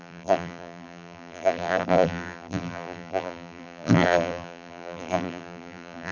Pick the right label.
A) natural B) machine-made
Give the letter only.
B